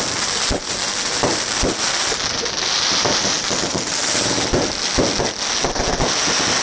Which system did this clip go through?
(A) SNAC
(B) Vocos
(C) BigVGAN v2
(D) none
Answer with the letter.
D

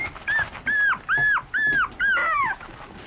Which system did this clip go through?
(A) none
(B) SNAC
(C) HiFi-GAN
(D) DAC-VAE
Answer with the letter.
A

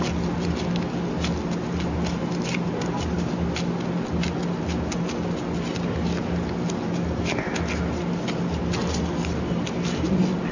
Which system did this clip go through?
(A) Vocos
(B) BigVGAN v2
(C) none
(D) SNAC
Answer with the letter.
C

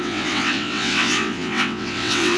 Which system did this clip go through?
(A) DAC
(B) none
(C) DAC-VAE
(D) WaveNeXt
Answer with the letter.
D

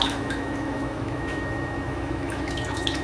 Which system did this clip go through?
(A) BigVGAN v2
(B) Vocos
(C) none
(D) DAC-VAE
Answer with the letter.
D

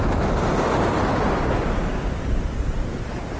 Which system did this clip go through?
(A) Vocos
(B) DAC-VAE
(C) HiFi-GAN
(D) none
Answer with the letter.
D